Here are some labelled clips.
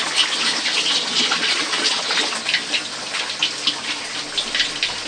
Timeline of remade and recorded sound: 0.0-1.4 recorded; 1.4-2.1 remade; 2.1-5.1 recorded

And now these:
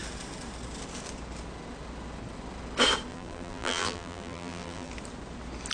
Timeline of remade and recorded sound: 0.0-3.1 recorded; 3.1-4.9 remade; 4.9-5.7 recorded